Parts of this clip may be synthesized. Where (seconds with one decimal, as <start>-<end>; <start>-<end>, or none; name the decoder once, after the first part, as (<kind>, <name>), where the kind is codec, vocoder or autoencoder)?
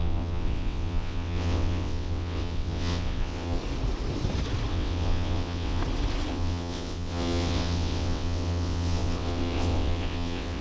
0.0-3.6 (vocoder, WaveNeXt); 4.7-5.8; 6.3-10.6